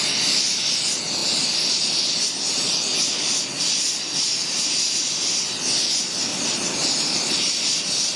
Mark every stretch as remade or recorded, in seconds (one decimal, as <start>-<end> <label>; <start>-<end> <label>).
0.0-6.3 recorded; 6.3-8.2 remade